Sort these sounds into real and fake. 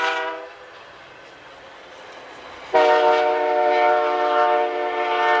real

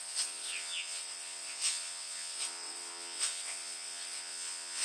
fake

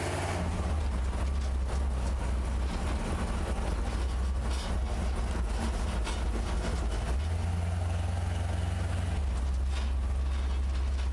real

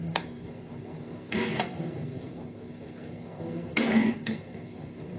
fake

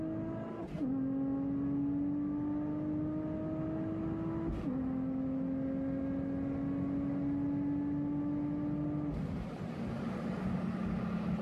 real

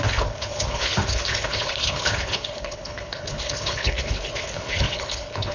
fake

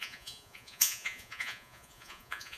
fake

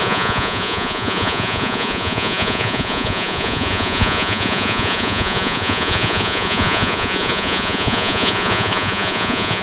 fake